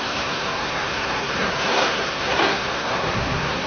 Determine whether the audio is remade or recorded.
remade